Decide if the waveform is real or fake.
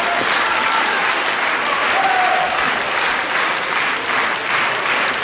real